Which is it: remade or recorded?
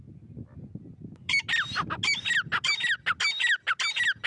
recorded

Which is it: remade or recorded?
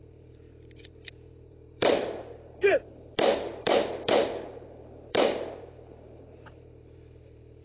remade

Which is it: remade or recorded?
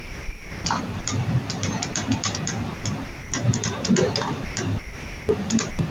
remade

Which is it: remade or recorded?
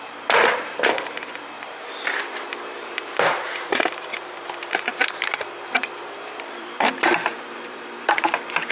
remade